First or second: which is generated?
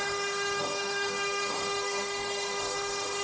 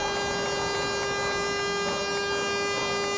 first